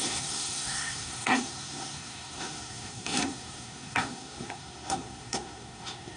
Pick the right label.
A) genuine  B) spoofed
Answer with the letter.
B